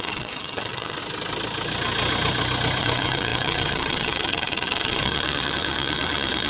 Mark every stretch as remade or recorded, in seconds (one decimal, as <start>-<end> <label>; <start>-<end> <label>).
0.0-1.0 remade; 1.0-2.8 recorded; 2.8-6.5 remade